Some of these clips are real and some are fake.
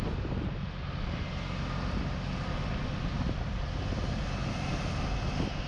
real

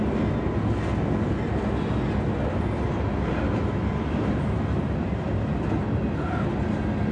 real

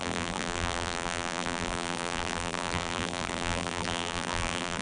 fake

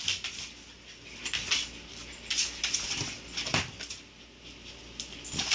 real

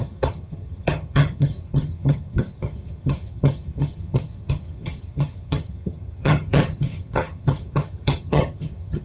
fake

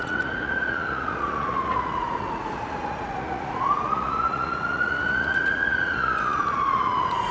fake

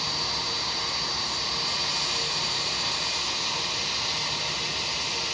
real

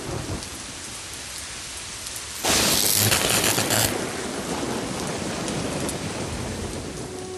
real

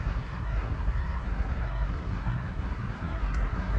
fake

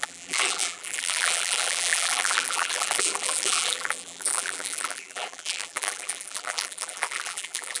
fake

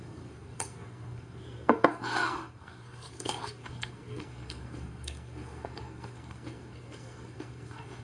fake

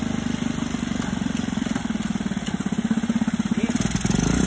real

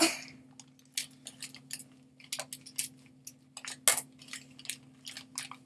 real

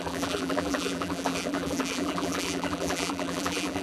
fake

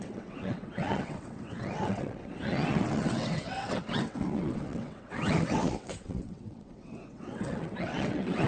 fake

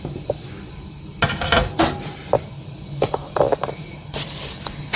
fake